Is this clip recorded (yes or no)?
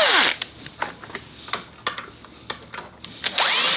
yes